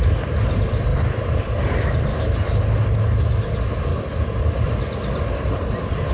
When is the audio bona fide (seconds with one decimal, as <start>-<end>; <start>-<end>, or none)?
0.0-6.1

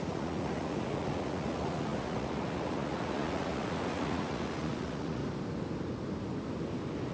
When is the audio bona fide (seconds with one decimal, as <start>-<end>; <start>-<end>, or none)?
5.2-7.1